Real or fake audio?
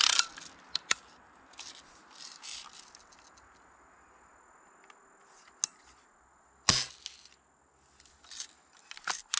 real